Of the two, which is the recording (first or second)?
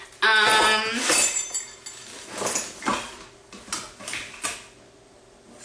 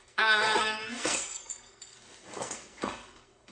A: first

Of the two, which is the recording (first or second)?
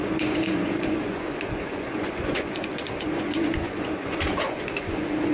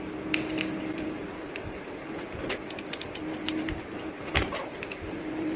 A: second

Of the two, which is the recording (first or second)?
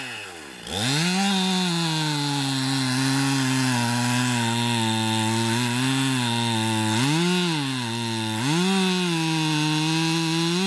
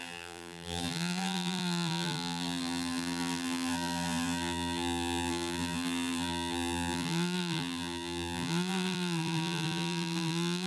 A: first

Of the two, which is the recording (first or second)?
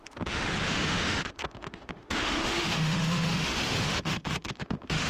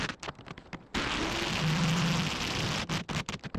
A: second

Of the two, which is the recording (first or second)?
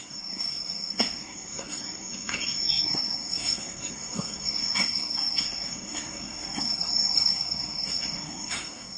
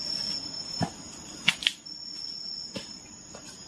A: second